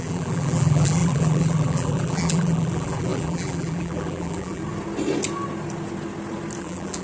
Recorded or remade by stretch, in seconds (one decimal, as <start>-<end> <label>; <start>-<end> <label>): 0.0-4.6 remade; 4.6-6.6 recorded; 6.6-7.0 remade